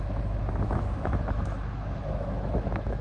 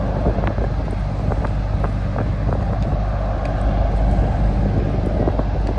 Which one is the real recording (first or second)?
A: second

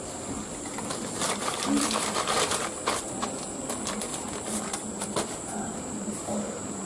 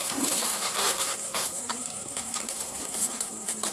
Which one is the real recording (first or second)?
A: first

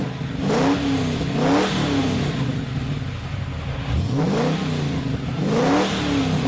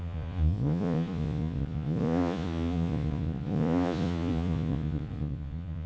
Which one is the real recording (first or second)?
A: first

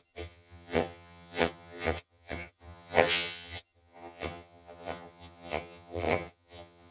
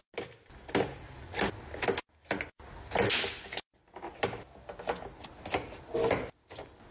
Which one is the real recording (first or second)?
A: second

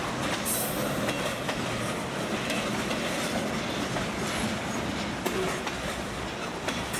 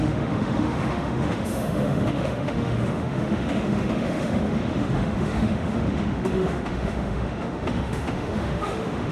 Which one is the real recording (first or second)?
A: first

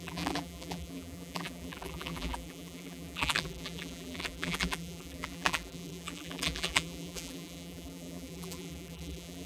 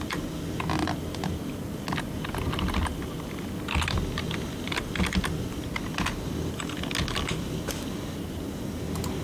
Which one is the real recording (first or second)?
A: second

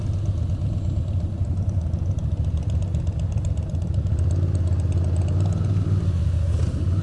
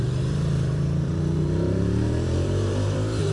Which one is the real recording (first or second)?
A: first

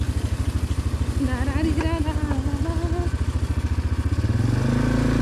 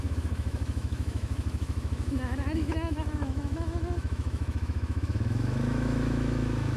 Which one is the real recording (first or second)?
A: first